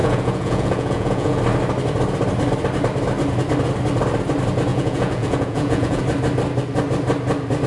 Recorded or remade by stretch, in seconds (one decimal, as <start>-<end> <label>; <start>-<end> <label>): 0.0-1.4 remade; 1.4-4.7 recorded; 4.7-6.0 remade; 6.0-7.7 recorded